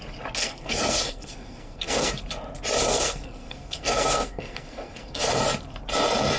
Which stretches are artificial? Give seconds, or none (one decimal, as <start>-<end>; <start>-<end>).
0.4-2.1; 2.9-5.4